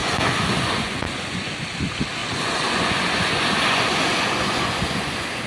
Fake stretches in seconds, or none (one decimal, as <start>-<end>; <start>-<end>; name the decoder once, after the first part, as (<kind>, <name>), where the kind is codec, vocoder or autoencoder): 0.0-1.5 (vocoder, Vocos); 2.2-5.5